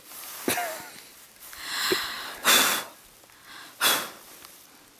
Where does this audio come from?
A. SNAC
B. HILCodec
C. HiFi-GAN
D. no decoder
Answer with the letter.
D